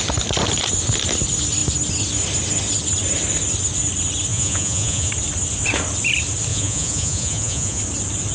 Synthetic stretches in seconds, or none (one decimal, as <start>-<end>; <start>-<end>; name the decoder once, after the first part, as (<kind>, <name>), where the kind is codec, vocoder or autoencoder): 4.3-5.1 (vocoder, Vocos); 6.5-7.8

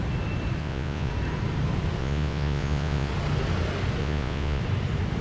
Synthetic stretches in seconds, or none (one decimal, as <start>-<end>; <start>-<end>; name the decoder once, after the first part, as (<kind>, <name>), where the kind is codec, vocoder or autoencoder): 0.6-1.1 (vocoder, Vocos); 2.0-3.1; 4.0-4.6

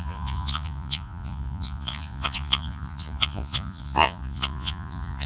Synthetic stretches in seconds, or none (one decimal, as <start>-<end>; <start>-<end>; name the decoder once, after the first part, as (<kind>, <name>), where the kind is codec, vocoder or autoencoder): 0.0-5.3 (vocoder, Vocos)

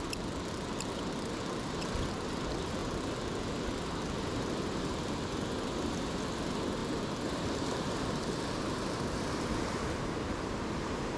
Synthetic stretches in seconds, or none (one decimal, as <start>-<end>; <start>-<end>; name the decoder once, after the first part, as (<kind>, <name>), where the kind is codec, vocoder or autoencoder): none